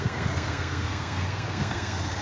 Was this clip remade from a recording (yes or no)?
yes